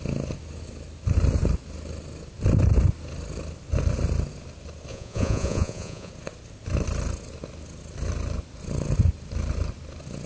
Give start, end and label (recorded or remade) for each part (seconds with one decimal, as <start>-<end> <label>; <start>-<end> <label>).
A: 0.0-4.9 recorded; 4.9-6.1 remade; 6.1-10.3 recorded